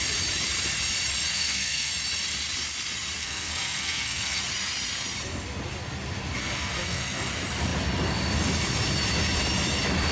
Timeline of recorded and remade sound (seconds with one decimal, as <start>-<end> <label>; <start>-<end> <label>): 0.0-1.3 recorded; 1.3-1.9 remade; 1.9-3.2 recorded; 3.2-4.4 remade; 4.4-6.4 recorded; 6.4-7.3 remade; 7.3-10.1 recorded